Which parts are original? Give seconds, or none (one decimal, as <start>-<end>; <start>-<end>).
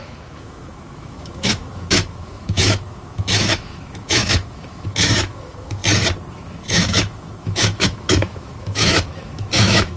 5.8-6.3